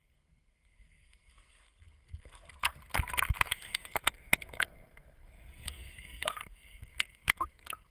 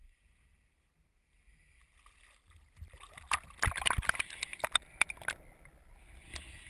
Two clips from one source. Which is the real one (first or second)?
second